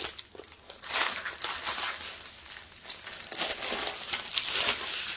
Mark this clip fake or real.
real